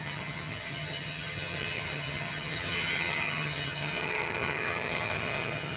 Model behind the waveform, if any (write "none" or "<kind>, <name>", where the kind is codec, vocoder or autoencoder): vocoder, HiFi-GAN